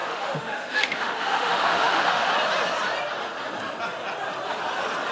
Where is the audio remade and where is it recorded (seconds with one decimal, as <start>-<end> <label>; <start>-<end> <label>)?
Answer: 0.0-2.3 remade; 2.3-5.1 recorded